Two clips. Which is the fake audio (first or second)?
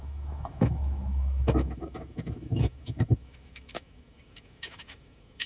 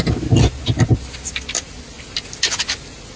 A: first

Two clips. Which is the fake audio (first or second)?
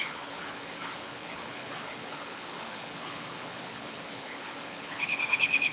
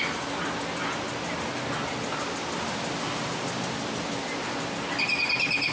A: first